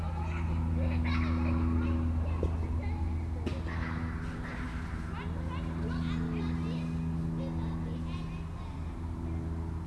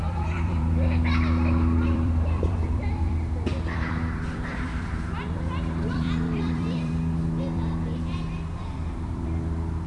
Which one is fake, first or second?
second